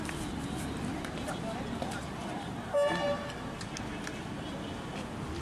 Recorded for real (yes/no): yes